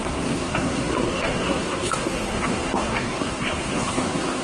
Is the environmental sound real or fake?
fake